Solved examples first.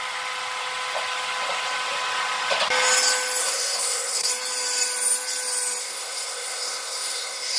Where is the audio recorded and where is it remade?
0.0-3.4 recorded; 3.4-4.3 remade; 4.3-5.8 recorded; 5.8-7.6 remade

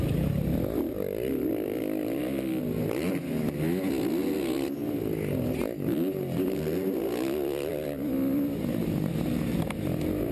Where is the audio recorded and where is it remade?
0.0-8.8 recorded; 8.8-9.6 remade; 9.6-10.3 recorded

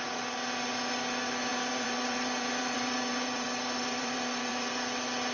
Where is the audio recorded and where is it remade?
0.0-1.5 recorded; 1.5-4.7 remade; 4.7-5.3 recorded

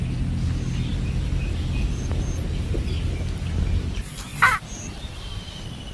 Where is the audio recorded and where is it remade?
0.0-4.3 recorded; 4.3-5.1 remade; 5.1-5.9 recorded